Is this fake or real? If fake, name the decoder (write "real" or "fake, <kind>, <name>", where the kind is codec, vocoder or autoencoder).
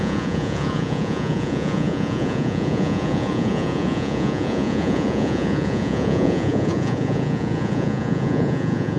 fake, vocoder, Vocos